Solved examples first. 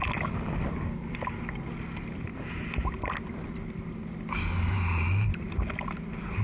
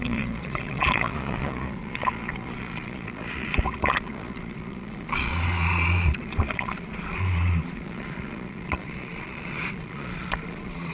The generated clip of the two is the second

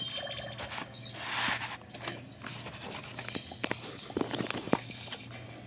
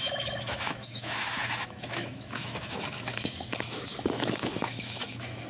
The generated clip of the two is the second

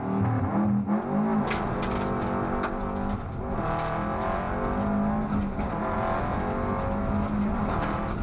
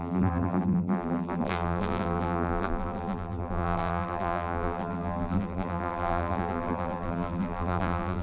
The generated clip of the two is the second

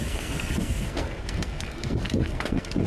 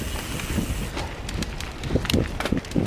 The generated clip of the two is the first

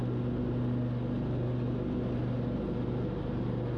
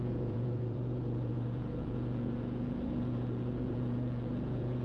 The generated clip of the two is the second